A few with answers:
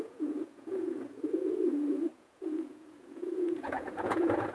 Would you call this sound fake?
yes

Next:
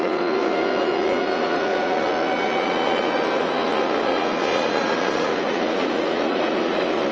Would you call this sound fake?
yes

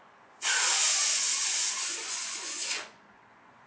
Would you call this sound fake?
yes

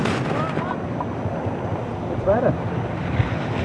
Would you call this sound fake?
no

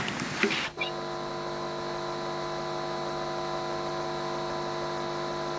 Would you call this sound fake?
no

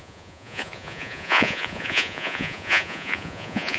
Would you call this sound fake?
yes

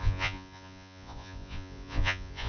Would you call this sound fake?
yes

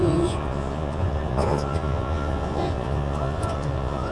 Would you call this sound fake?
yes